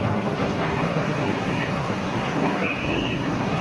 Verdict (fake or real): fake